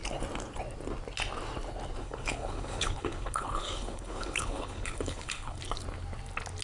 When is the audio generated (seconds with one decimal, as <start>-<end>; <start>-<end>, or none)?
2.0-5.6